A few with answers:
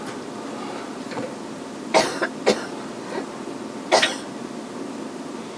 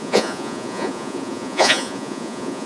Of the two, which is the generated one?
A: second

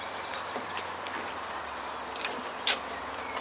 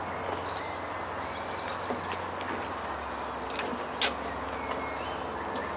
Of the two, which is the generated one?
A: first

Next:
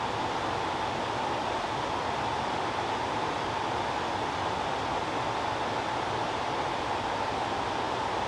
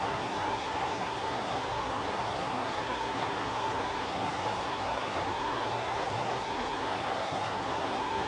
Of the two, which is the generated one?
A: second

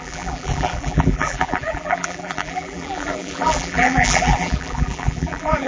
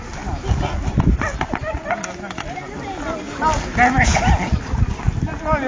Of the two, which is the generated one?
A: first